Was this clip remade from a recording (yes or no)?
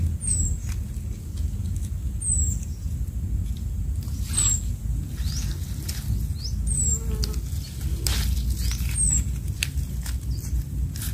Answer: no